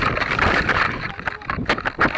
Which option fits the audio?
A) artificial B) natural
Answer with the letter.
B